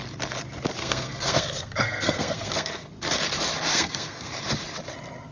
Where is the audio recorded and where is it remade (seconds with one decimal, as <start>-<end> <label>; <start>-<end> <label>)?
0.0-0.8 recorded; 0.8-2.9 remade; 2.9-3.7 recorded; 3.7-4.3 remade; 4.3-5.3 recorded